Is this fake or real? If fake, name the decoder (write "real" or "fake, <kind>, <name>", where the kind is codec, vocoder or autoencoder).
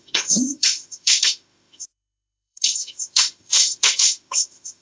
fake, autoencoder, DAC-VAE